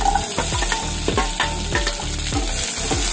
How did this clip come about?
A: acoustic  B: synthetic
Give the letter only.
A